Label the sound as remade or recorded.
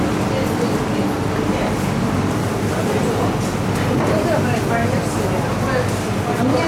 recorded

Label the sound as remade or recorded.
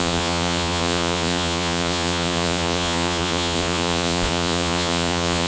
remade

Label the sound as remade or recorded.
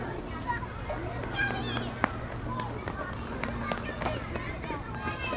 recorded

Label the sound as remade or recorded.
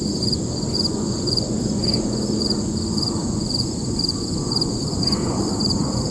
remade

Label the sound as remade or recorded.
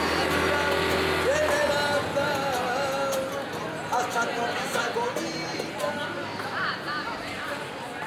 recorded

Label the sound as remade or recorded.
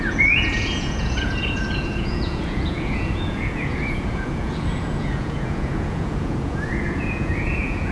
remade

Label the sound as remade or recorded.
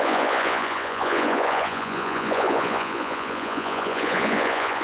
remade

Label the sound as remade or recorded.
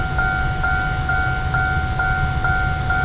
recorded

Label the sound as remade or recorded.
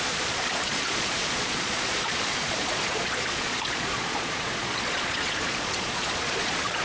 remade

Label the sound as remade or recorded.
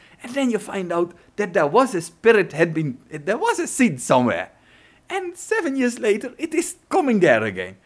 recorded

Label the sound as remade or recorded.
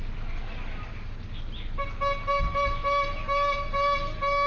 recorded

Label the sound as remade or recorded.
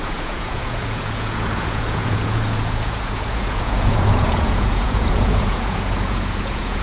remade